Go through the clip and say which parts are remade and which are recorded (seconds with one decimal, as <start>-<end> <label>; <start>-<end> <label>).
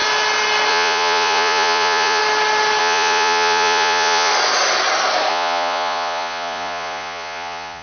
0.0-0.7 recorded; 0.7-2.2 remade; 2.2-2.8 recorded; 2.8-4.3 remade; 4.3-5.3 recorded; 5.3-7.8 remade